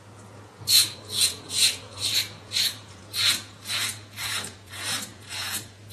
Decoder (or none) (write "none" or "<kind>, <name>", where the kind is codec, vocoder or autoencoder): vocoder, Vocos